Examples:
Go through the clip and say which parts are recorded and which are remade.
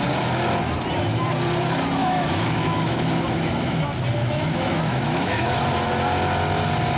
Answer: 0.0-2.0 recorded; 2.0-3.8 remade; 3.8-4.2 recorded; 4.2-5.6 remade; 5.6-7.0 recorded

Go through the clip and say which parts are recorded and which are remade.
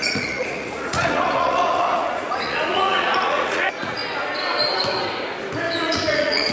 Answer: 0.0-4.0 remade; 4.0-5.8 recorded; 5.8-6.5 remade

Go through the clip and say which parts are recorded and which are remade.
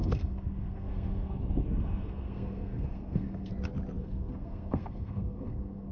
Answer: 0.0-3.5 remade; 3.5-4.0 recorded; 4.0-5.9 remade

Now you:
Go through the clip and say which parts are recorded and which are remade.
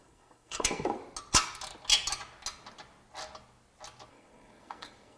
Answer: 0.0-1.0 remade; 1.0-4.1 recorded; 4.1-5.2 remade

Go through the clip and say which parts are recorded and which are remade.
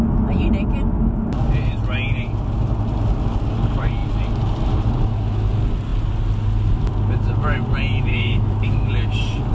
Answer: 0.0-8.1 recorded; 8.1-8.9 remade; 8.9-9.5 recorded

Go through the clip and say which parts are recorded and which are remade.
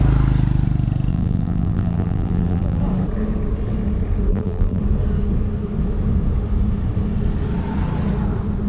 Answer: 0.0-1.1 recorded; 1.1-2.8 remade; 2.8-4.3 recorded; 4.3-4.8 remade; 4.8-8.7 recorded